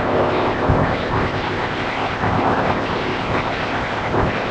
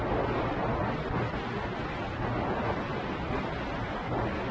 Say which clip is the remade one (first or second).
first